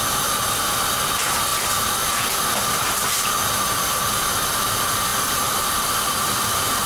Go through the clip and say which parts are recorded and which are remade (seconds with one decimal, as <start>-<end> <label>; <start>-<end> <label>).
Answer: 0.0-1.5 remade; 1.5-2.4 recorded; 2.4-6.9 remade